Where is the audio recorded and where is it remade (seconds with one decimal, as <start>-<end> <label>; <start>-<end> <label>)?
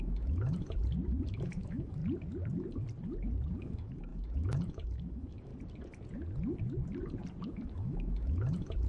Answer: 0.0-0.8 remade; 0.8-1.3 recorded; 1.3-2.0 remade; 2.0-3.6 recorded; 3.6-5.5 remade; 5.5-7.5 recorded; 7.5-8.9 remade